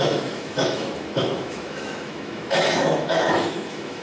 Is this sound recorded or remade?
remade